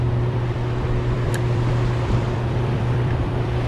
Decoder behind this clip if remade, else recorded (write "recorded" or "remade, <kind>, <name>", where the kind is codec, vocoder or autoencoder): remade, vocoder, BigVGAN v2